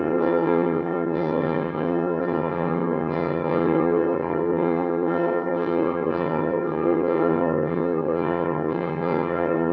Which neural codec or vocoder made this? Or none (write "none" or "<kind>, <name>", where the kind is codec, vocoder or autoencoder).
vocoder, HiFi-GAN